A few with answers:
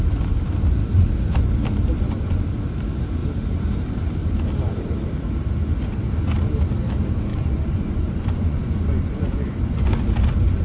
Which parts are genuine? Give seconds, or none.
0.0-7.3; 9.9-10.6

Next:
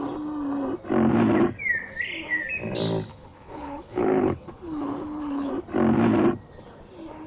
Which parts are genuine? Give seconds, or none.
0.0-3.1; 5.5-7.3

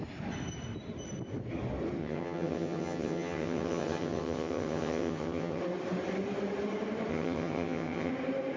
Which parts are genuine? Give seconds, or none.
0.0-2.0; 5.6-7.1; 8.1-8.6

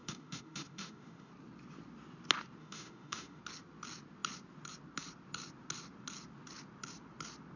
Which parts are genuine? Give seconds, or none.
1.3-2.6; 3.4-7.6

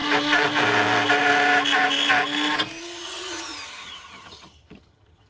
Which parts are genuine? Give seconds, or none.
0.0-2.8

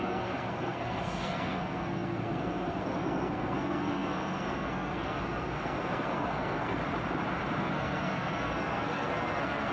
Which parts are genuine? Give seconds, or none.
6.8-7.6